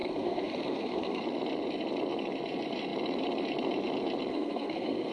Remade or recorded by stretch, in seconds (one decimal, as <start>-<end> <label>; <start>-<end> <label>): 0.0-1.2 remade; 1.2-4.3 recorded; 4.3-5.1 remade